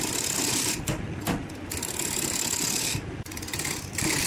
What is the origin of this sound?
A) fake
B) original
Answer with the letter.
B